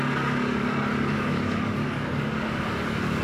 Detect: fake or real fake